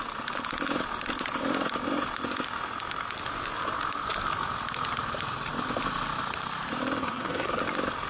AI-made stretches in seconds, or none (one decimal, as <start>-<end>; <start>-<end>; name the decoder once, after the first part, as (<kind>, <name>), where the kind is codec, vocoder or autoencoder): 7.0-7.6 (codec, SNAC)